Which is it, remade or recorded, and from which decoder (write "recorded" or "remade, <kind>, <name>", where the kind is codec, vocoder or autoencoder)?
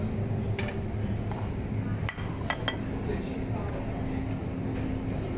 recorded